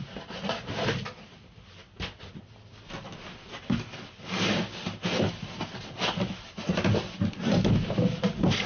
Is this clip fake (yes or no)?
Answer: no